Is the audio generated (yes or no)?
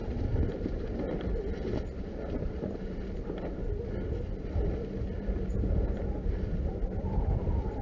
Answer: no